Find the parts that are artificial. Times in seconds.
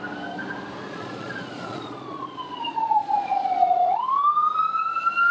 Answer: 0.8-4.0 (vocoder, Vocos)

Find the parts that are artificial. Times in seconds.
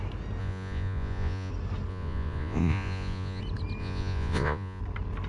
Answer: 0.4-1.5 (vocoder, Vocos); 1.9-3.4; 3.8-4.8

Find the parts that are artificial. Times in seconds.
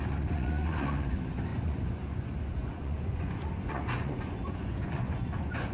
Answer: 0.0-5.7 (vocoder, Vocos)